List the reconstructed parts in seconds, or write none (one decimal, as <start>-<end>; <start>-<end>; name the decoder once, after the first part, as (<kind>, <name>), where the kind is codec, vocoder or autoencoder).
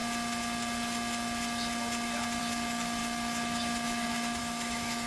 2.4-5.1 (autoencoder, DAC-VAE)